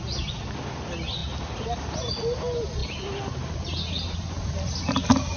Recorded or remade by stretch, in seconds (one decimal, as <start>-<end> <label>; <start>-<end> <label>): 0.0-5.4 recorded